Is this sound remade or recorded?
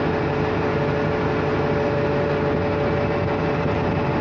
recorded